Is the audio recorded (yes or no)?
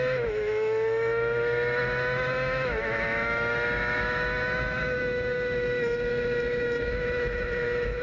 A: no